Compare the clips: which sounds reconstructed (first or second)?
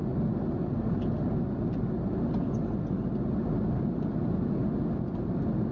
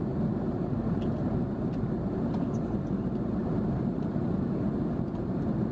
second